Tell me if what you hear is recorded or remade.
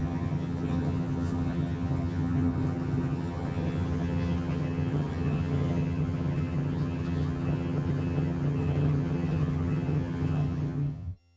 remade